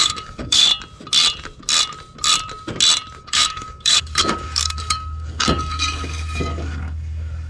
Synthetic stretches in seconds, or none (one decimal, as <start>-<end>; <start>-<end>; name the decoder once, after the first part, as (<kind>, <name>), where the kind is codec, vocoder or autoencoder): 0.0-0.7 (codec, DAC); 3.2-7.5